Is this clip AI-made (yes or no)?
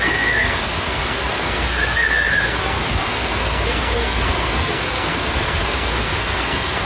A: yes